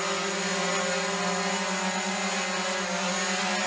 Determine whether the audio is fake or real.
real